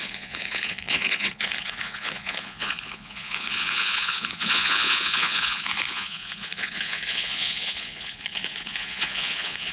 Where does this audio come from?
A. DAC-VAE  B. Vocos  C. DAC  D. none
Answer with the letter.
B